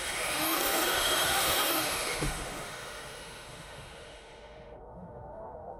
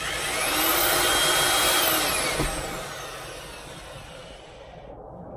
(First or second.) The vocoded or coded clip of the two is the first